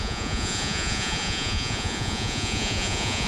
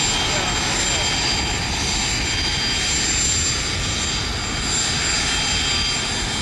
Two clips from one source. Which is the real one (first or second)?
second